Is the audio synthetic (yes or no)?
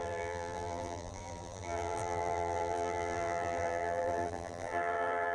yes